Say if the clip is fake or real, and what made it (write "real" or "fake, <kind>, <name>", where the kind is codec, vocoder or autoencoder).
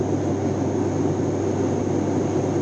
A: real